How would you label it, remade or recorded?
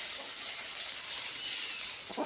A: recorded